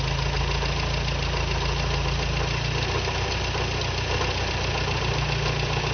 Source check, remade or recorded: recorded